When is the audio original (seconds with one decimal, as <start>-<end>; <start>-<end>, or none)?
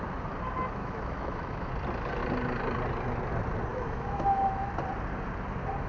0.0-0.8; 1.7-3.7; 4.7-5.9